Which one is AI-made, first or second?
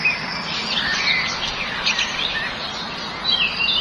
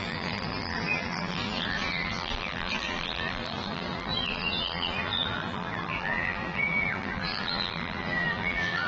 second